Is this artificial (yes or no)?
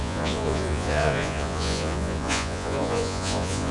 yes